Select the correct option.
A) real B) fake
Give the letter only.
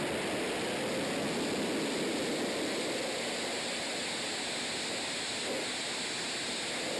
A